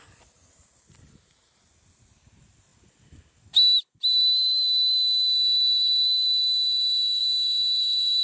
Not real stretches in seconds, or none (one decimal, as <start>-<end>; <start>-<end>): none